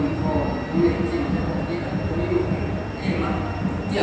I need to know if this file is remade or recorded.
recorded